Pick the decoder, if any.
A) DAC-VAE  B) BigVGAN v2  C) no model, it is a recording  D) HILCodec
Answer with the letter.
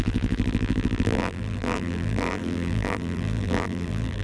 B